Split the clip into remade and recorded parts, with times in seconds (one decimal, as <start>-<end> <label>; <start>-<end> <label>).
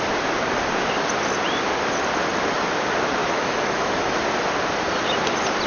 0.0-3.2 recorded; 3.2-4.2 remade; 4.2-5.7 recorded